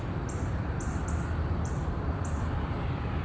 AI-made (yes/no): no